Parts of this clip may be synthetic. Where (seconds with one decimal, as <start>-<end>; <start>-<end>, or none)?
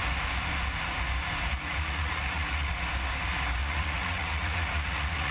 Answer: 1.5-2.7; 3.6-5.3